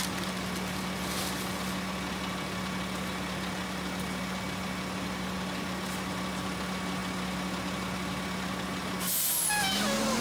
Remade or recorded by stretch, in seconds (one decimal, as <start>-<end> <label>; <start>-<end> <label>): 0.0-10.2 recorded